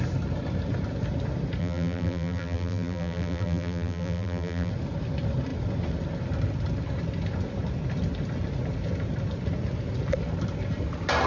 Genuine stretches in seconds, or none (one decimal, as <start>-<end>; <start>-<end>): 0.0-1.6; 4.7-11.3